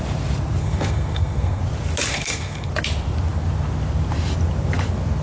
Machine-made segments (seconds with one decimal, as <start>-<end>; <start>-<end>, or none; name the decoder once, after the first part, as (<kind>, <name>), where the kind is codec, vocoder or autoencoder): 0.6-1.6 (codec, SNAC); 2.1-2.7